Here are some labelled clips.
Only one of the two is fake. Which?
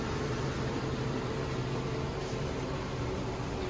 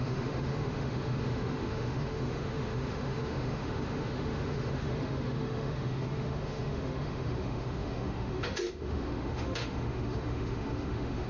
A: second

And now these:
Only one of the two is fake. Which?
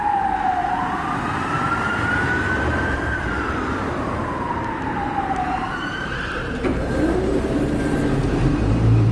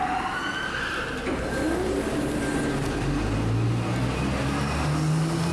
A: first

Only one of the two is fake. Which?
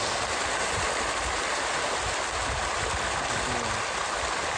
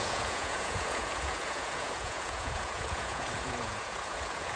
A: second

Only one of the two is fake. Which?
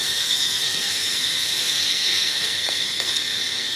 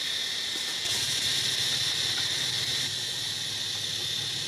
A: first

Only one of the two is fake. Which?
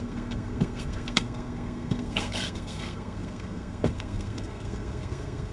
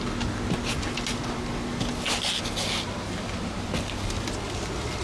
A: first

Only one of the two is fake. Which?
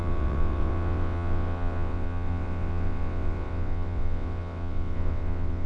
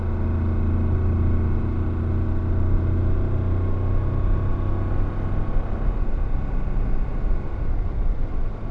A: first